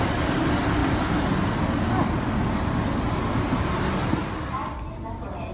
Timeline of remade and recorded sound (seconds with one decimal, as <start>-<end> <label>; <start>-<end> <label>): 0.0-5.5 recorded